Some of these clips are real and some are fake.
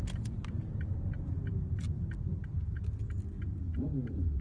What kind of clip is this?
real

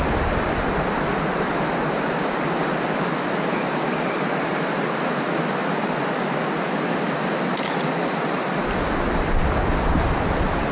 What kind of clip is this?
real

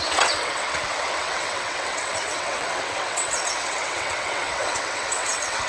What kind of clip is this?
fake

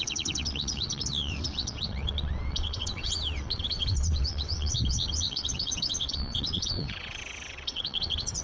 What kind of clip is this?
fake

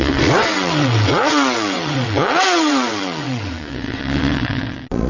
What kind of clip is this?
fake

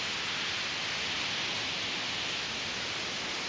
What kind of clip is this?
real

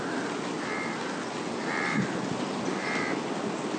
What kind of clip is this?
real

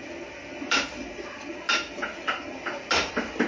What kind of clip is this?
real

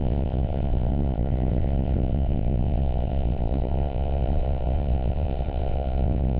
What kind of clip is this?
fake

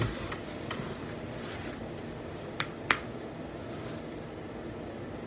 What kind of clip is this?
real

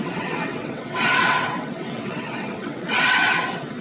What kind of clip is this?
fake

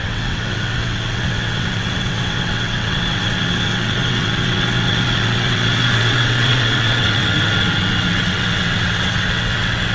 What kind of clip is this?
fake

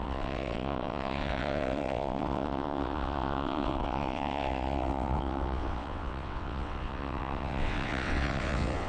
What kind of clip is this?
fake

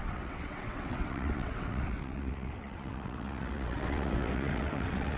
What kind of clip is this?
fake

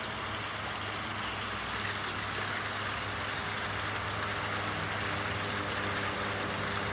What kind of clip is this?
real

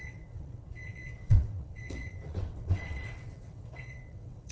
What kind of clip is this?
fake